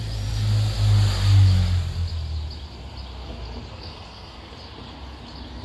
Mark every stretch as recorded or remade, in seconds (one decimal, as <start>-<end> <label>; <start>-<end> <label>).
0.0-3.7 recorded; 3.7-4.5 remade; 4.5-5.6 recorded